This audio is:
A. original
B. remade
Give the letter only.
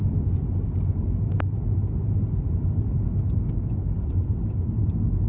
A